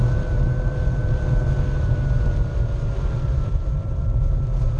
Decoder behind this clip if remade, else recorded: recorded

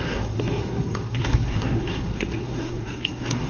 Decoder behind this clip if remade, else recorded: remade, codec, SNAC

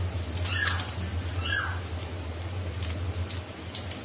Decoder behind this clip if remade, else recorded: recorded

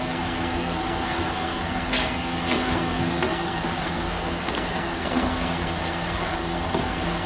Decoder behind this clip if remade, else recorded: remade, codec, SNAC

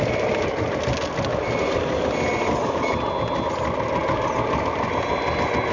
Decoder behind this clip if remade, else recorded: recorded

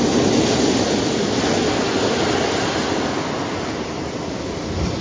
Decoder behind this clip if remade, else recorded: recorded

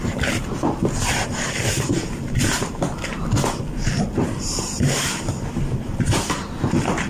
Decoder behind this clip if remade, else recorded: recorded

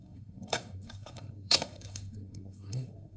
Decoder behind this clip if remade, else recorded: remade, codec, SNAC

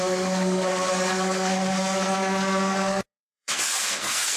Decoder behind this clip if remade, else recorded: remade, codec, SNAC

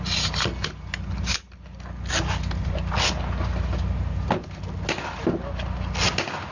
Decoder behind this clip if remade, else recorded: recorded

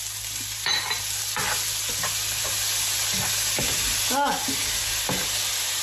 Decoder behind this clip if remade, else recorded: recorded